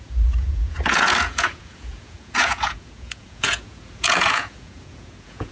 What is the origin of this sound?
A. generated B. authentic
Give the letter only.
A